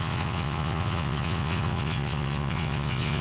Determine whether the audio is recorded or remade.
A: remade